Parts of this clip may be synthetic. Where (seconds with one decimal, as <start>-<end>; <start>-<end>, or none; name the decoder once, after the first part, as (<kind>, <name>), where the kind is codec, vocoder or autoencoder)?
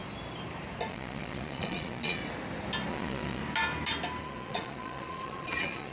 0.9-2.2 (vocoder, Vocos); 2.9-3.4; 4.2-5.9